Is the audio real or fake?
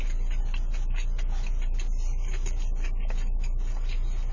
real